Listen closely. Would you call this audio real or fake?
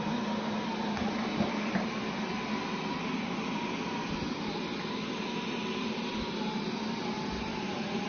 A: real